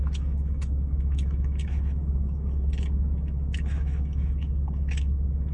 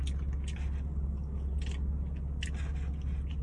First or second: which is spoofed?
first